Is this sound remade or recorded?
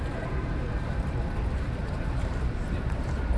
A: remade